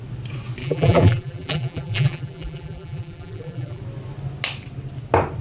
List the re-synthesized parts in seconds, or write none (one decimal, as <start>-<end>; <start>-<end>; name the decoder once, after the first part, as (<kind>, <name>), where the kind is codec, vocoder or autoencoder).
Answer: 0.6-3.8 (vocoder, BigVGAN v2)